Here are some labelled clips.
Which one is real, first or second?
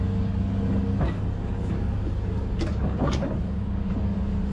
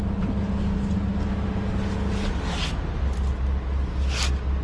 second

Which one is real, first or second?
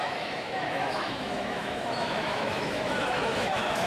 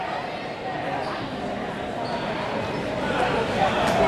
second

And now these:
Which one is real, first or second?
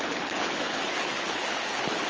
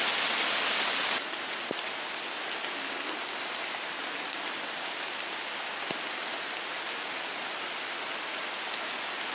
second